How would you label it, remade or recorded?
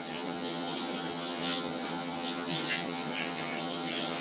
remade